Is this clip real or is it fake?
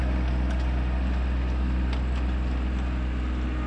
real